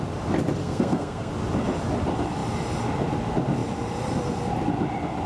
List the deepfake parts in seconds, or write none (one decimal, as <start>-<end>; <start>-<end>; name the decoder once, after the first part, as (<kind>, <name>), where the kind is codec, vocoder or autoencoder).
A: 0.6-1.3 (codec, SNAC)